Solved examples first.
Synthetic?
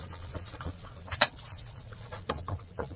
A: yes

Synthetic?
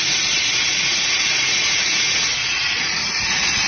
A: yes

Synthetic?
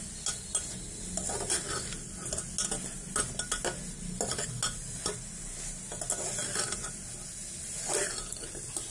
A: no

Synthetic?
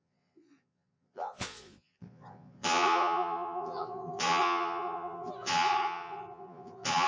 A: yes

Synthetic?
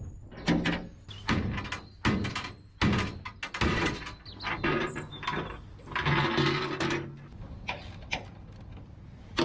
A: no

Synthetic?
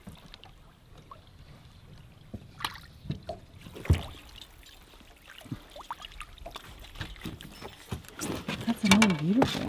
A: no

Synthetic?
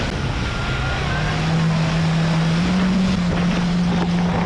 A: no